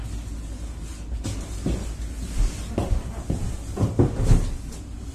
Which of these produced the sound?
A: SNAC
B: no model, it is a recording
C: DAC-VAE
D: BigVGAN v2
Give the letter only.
B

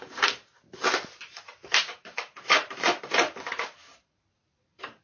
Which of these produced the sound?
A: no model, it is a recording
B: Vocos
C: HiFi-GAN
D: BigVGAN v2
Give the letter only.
D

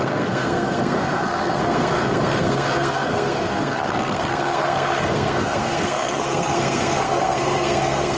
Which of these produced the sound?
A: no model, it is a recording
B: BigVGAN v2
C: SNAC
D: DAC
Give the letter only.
C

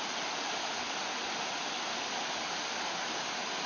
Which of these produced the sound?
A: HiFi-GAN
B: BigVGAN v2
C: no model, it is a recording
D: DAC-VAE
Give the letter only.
C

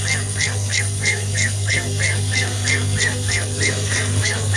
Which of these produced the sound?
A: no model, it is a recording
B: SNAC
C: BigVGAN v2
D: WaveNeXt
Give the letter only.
B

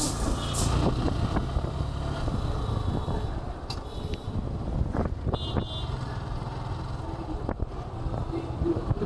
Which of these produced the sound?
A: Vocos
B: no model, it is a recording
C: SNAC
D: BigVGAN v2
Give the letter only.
B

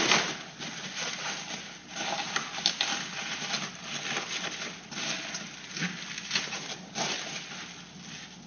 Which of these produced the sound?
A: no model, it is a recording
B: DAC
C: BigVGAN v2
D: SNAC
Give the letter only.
A